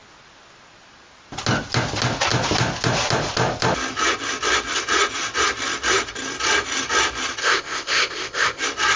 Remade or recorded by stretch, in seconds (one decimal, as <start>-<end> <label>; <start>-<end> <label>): 0.0-7.4 recorded; 7.4-8.6 remade; 8.6-9.0 recorded